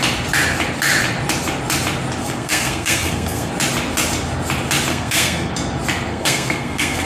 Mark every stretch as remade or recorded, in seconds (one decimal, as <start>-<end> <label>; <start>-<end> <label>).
0.0-2.2 recorded; 2.2-3.5 remade; 3.5-4.9 recorded; 4.9-5.5 remade; 5.5-6.1 recorded; 6.1-7.1 remade